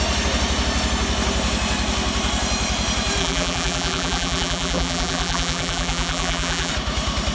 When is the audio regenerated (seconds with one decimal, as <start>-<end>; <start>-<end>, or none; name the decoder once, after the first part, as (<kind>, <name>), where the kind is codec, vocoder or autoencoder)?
3.2-6.7 (vocoder, BigVGAN v2)